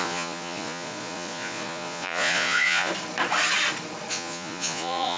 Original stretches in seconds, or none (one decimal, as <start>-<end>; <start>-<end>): 2.9-4.1